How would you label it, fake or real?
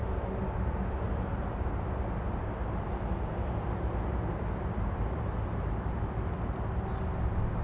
real